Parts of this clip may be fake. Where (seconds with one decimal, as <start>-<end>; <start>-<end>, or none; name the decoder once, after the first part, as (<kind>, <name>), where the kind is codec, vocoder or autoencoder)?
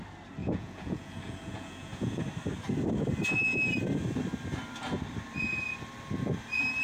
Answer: 0.4-2.2 (vocoder, Vocos)